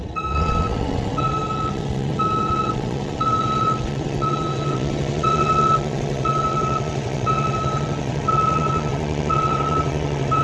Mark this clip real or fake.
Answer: fake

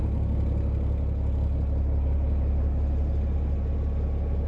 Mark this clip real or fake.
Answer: real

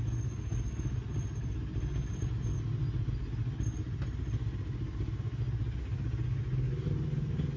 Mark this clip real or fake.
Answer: real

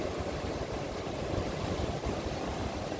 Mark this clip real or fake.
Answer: real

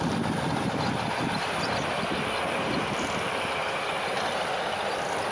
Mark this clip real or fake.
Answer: real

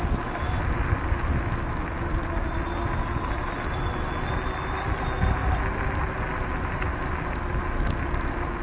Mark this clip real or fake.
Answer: real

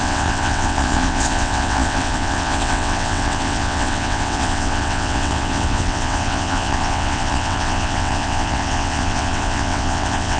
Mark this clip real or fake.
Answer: fake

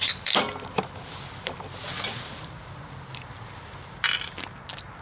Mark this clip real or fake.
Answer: real